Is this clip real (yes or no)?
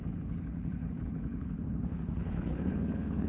no